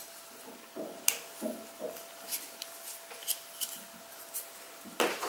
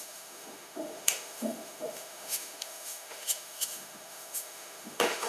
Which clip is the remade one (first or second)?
second